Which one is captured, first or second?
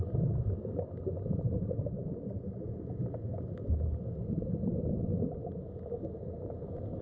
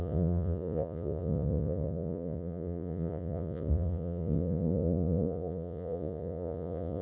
first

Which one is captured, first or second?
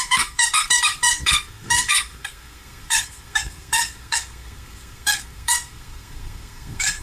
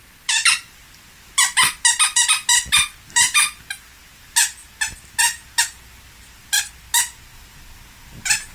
second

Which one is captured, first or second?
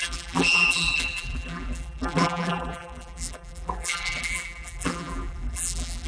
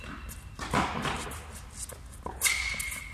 second